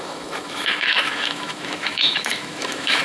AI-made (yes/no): yes